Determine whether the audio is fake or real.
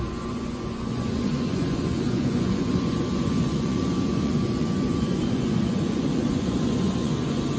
fake